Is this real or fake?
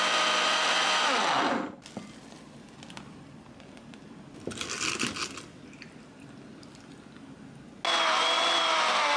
real